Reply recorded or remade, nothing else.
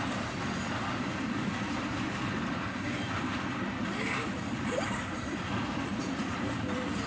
recorded